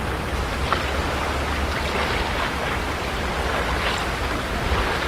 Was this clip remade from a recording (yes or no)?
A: no